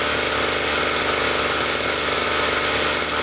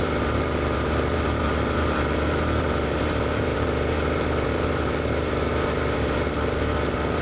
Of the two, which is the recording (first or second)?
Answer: first